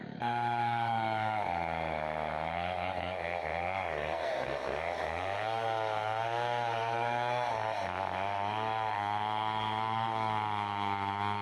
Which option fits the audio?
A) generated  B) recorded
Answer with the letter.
A